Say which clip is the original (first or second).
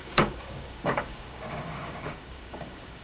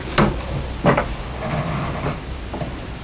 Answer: second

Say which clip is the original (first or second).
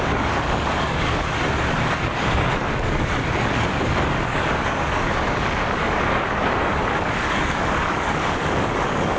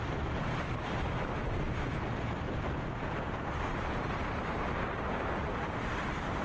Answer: second